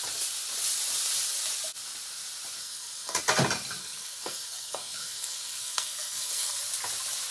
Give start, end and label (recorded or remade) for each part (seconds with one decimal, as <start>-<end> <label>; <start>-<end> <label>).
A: 0.0-2.6 recorded; 2.6-3.2 remade; 3.2-3.8 recorded; 3.8-6.6 remade; 6.6-7.3 recorded